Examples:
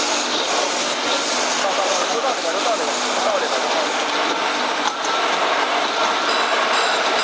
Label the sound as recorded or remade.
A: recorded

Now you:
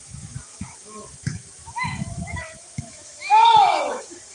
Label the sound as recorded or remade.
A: remade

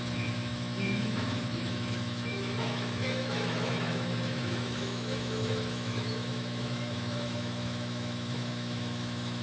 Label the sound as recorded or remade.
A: remade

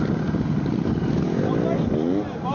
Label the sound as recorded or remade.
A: recorded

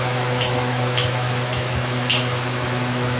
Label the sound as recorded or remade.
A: remade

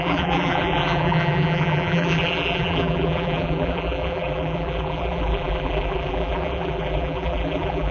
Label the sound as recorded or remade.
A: remade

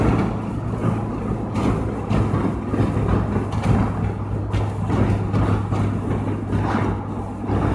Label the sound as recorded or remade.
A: recorded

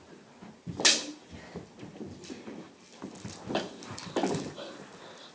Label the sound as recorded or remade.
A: recorded